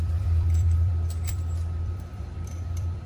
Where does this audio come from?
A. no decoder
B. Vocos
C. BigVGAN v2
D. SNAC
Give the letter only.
C